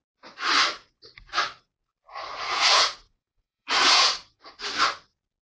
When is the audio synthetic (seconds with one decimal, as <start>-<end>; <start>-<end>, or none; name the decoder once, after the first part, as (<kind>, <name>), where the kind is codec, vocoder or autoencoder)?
2.3-4.5 (vocoder, Vocos)